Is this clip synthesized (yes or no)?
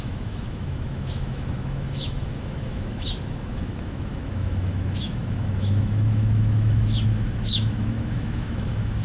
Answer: yes